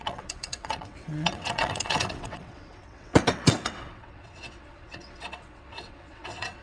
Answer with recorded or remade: remade